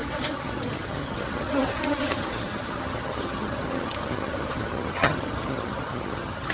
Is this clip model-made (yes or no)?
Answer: yes